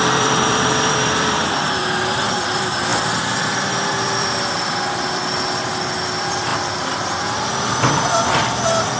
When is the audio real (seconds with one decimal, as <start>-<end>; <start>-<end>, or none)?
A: 1.8-2.3; 2.9-3.5; 5.2-5.9